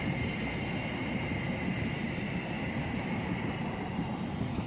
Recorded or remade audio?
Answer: recorded